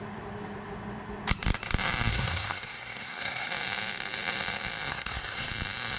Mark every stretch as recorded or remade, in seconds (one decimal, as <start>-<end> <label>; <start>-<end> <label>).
0.0-2.1 recorded; 2.1-3.5 remade; 3.5-4.9 recorded; 4.9-5.5 remade; 5.5-6.0 recorded